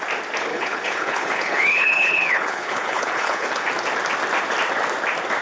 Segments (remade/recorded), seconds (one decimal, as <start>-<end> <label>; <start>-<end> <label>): 0.0-0.5 recorded; 0.5-3.7 remade; 3.7-5.4 recorded